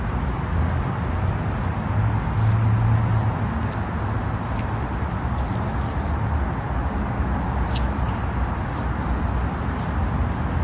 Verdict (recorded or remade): recorded